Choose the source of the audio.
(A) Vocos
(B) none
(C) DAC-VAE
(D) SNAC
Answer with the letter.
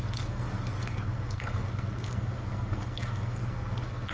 D